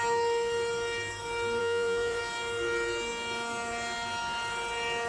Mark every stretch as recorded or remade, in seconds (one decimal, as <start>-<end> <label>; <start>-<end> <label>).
0.0-1.6 recorded; 1.6-2.2 remade; 2.2-5.1 recorded